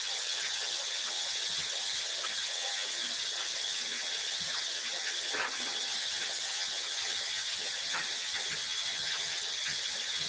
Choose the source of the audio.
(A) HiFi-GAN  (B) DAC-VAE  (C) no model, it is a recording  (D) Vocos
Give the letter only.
A